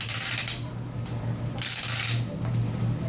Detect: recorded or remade recorded